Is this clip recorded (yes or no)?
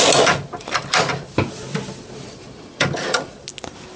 yes